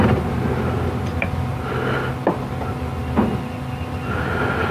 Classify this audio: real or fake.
real